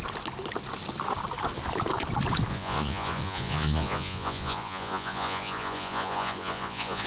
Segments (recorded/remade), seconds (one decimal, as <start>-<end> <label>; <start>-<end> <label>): 0.0-2.5 recorded; 2.5-7.1 remade